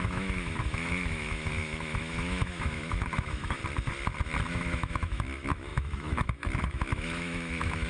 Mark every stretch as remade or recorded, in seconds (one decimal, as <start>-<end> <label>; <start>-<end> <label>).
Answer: 0.0-3.6 remade; 3.6-4.5 recorded; 4.5-7.9 remade